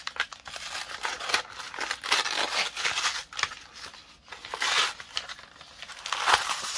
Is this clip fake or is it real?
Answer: real